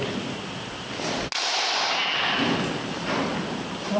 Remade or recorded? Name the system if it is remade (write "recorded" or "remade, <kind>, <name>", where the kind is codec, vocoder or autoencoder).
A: recorded